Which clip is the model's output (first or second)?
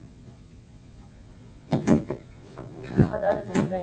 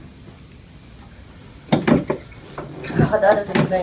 first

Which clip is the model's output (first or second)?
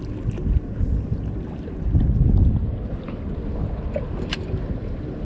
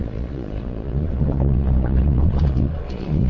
second